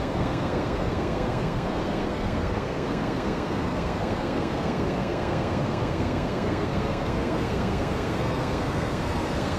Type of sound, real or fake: fake